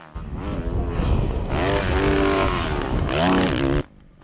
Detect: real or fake real